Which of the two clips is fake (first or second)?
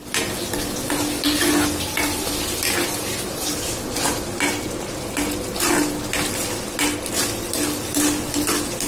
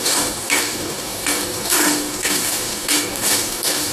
second